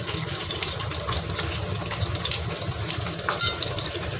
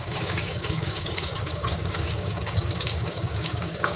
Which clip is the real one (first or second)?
first